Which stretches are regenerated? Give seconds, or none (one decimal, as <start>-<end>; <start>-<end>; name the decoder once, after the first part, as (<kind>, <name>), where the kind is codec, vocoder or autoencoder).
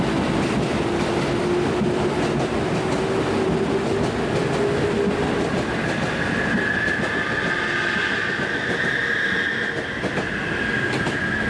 none